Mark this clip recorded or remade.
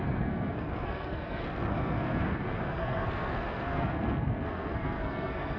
remade